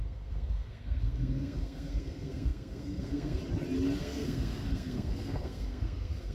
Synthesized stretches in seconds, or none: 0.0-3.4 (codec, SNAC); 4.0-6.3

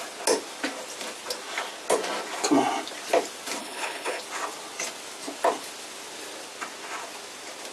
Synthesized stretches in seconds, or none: 3.6-4.2 (codec, HILCodec)

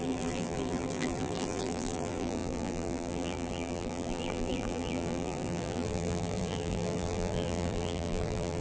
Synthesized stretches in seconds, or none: 0.0-8.6 (vocoder, BigVGAN v2)

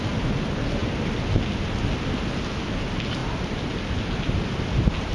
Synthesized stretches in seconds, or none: none

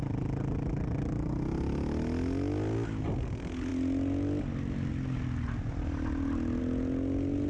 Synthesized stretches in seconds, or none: none